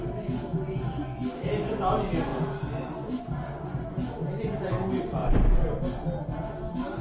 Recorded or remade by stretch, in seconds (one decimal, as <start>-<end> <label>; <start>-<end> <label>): 0.0-5.2 recorded; 5.2-5.8 remade; 5.8-7.0 recorded